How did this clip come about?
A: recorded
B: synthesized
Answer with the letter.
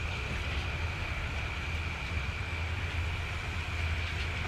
A